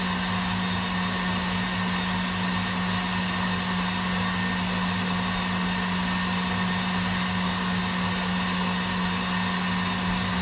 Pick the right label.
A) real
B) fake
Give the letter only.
A